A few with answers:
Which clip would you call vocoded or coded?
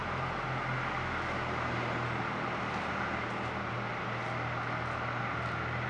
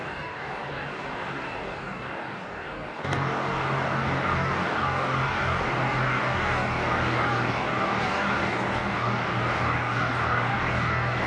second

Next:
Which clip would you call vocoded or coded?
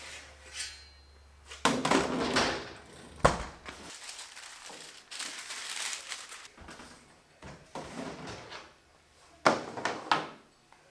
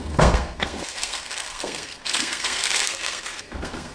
second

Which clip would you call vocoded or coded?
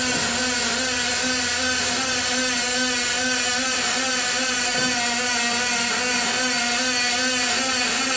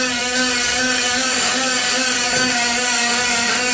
second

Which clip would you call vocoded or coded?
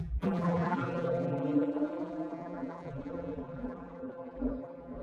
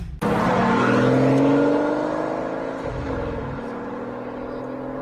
first